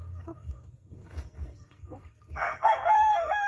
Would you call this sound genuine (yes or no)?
no